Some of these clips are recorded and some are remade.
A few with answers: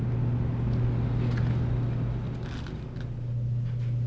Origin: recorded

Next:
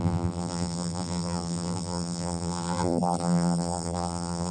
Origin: remade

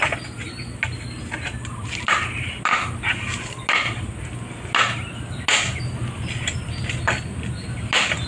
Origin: recorded